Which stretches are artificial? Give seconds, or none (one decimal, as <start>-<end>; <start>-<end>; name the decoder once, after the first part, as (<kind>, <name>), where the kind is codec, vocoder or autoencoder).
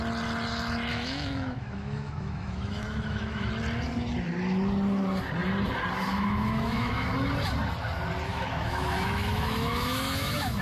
0.9-3.5 (autoencoder, DAC-VAE); 6.1-7.1; 8.3-10.6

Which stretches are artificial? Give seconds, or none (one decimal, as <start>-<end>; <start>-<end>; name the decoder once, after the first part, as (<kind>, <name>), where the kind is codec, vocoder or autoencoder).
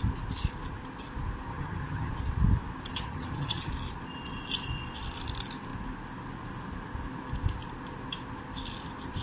1.5-2.1 (vocoder, HiFi-GAN); 2.9-3.7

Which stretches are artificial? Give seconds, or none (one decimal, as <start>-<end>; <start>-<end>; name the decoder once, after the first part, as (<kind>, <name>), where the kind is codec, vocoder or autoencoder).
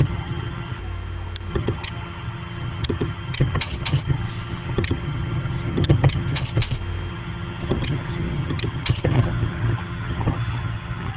0.0-0.8 (vocoder, HiFi-GAN); 1.5-6.6; 7.1-11.2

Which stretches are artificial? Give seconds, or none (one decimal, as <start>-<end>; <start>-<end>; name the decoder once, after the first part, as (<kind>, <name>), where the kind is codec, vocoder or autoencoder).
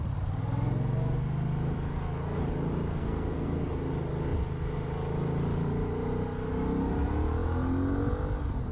2.9-3.7 (codec, SNAC)